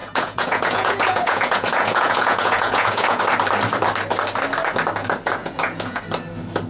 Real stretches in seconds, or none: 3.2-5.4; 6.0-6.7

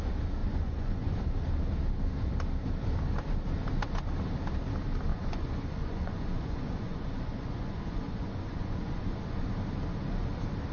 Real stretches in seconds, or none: 0.0-0.4; 1.2-5.1; 9.5-10.7